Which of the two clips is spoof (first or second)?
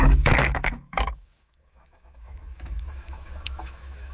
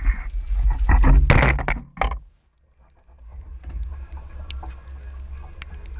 first